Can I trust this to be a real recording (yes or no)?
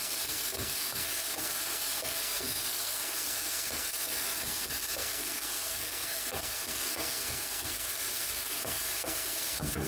no